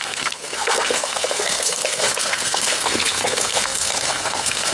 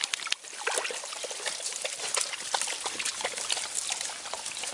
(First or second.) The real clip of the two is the second